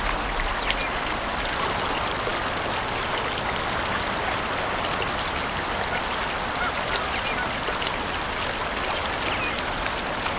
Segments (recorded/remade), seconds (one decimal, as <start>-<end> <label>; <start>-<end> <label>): 0.0-10.4 recorded